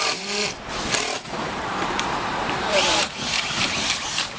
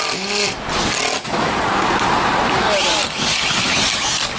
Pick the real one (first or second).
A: second